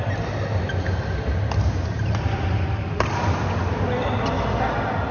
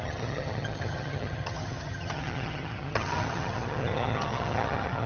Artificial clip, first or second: second